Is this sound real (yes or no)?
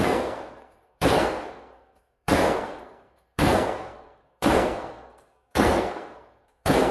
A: no